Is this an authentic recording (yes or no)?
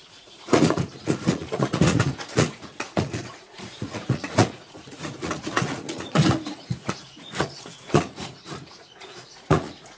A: no